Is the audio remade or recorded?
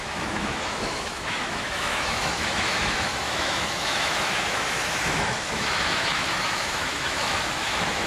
remade